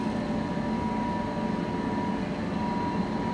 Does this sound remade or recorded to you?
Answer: recorded